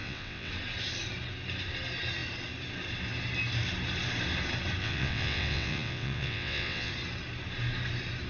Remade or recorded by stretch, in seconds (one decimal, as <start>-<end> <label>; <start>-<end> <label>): 0.0-0.5 remade; 0.5-4.8 recorded; 4.8-6.9 remade; 6.9-8.3 recorded